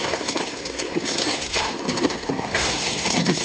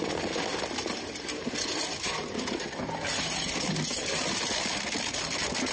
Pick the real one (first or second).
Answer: second